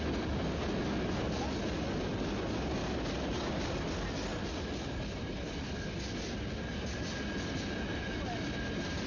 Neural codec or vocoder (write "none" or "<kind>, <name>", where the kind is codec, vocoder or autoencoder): none